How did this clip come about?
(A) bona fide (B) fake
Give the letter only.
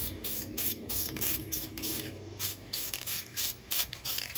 B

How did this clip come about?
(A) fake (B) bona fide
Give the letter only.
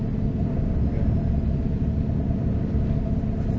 B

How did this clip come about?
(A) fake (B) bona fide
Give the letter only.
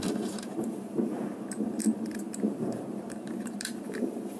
A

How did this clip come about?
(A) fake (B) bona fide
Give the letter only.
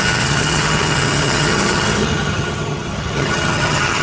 A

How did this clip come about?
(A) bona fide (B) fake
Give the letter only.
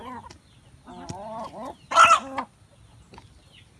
A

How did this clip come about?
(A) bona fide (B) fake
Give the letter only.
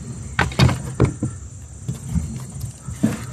A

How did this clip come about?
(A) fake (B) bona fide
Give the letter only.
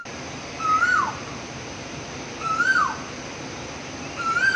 A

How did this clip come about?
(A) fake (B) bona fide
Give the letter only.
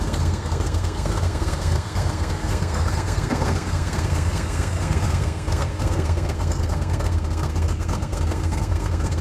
A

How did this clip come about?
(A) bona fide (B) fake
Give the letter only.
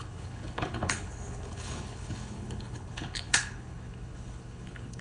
B